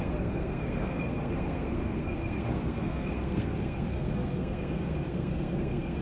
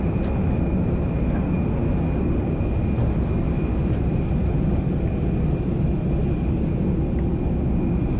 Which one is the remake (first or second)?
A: first